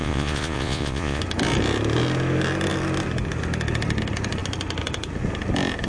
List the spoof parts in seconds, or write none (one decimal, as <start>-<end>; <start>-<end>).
0.0-1.2